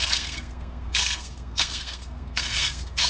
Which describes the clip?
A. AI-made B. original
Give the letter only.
A